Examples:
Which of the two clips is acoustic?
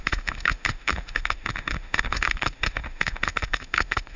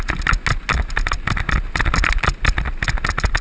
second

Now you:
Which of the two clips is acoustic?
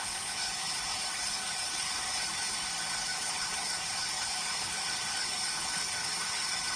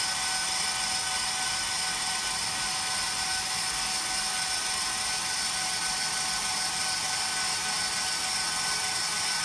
second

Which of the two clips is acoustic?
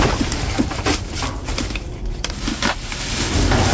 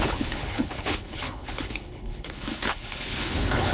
first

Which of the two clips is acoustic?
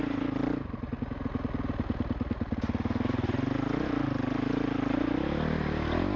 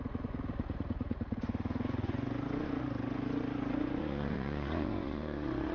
first